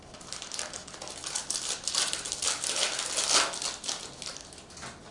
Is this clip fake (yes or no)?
no